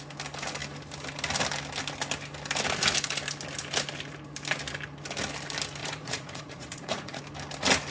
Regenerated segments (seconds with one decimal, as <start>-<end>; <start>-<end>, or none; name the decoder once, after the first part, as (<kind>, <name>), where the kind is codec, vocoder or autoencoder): 5.8-7.2 (vocoder, Vocos)